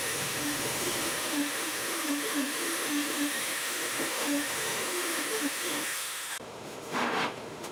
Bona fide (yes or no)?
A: no